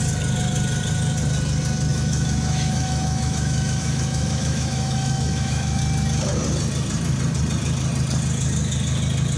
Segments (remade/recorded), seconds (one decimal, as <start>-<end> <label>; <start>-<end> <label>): 0.0-1.9 recorded; 1.9-5.8 remade; 5.8-9.4 recorded